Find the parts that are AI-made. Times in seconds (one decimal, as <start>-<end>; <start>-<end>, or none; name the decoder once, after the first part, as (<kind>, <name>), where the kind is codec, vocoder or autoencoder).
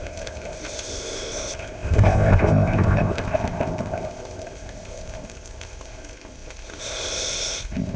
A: 0.0-8.0 (codec, ZipCodec)